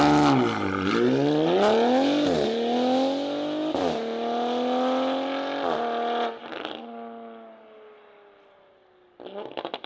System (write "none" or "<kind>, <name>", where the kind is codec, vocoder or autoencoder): none